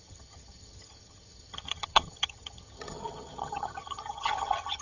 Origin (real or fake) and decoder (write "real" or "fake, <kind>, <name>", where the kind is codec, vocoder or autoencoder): fake, vocoder, HiFi-GAN